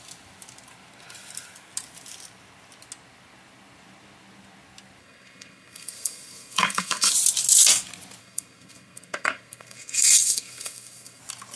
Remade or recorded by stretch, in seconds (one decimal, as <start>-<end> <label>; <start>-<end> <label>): 0.0-5.0 recorded; 5.0-7.1 remade; 7.1-8.2 recorded; 8.2-11.2 remade; 11.2-11.6 recorded